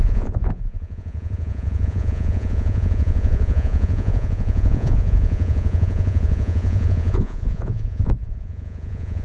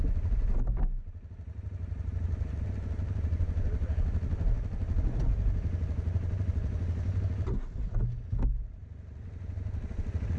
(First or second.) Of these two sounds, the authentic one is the second